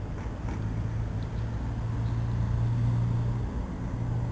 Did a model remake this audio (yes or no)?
no